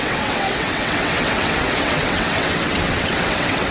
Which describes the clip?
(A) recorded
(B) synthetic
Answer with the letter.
B